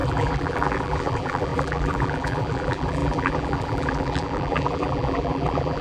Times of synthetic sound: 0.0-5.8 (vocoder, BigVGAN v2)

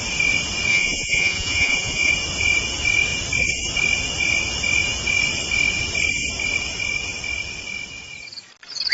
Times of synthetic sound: 0.7-2.1 (vocoder, Vocos)

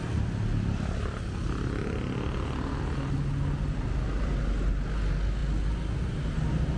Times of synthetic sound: none

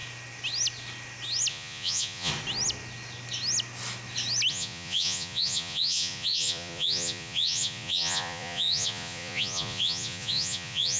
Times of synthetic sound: 1.5-2.3 (vocoder, Vocos); 4.5-11.0

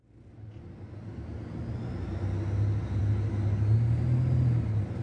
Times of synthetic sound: none